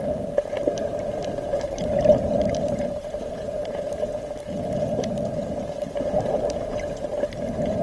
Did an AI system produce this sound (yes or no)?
yes